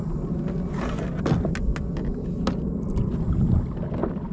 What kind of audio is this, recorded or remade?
recorded